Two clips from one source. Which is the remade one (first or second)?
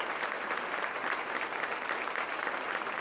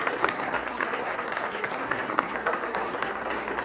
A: second